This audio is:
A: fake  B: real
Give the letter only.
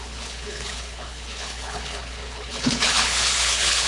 A